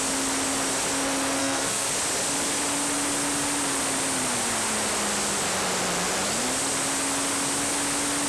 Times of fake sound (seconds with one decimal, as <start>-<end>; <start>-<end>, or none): 1.4-1.9